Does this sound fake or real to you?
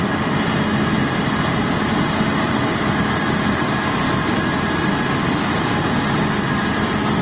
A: real